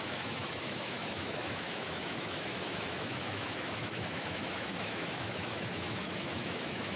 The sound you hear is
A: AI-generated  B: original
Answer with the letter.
A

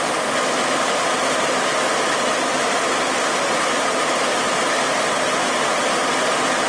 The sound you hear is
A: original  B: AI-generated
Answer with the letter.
A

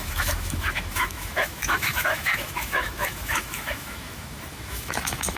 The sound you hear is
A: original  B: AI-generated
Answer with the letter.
B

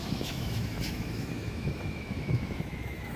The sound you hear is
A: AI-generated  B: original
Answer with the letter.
A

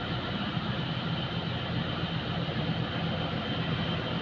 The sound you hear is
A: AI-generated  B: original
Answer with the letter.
B